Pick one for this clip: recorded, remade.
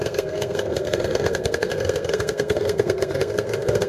remade